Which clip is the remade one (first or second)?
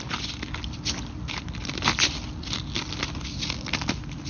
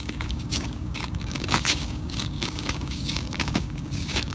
second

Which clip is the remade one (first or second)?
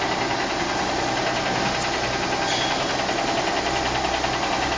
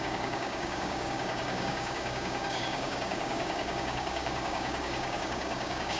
second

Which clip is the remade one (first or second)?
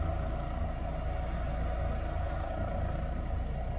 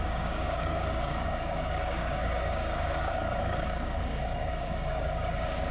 second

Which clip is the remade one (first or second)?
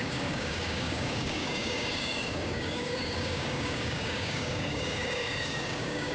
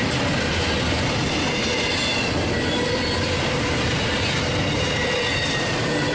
first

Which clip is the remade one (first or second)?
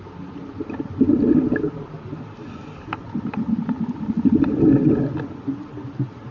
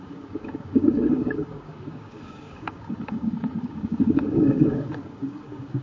second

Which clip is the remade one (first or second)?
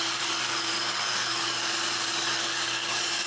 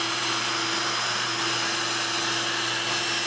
first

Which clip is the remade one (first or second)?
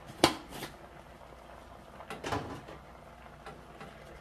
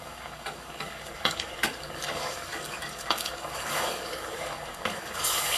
second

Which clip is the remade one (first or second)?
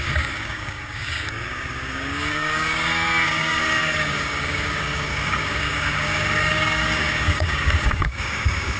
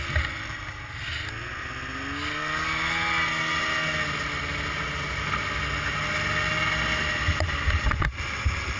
first